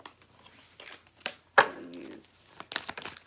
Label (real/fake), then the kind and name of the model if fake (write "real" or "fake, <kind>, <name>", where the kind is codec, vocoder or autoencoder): real